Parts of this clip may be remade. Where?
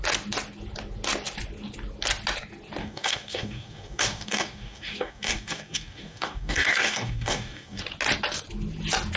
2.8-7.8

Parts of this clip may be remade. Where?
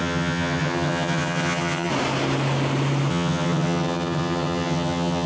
0.0-1.9; 3.1-5.3